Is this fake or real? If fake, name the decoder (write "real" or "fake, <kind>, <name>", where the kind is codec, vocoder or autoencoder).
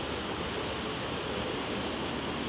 real